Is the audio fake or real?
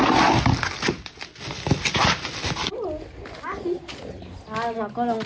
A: real